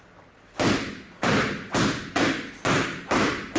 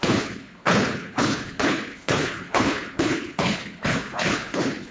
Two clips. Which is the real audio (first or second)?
first